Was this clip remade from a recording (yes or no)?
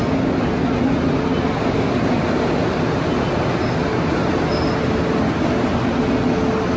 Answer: no